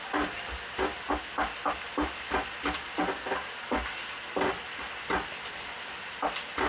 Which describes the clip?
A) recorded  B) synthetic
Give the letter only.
A